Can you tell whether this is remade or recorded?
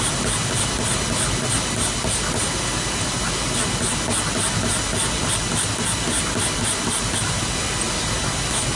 recorded